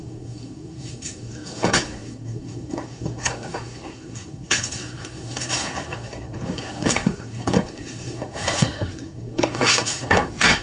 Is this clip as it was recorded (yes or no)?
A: no